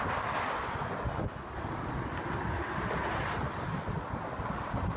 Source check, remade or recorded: recorded